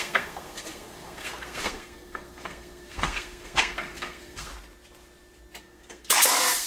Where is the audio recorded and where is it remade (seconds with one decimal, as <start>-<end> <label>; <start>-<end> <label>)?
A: 0.0-4.5 remade; 4.5-5.6 recorded; 5.6-6.7 remade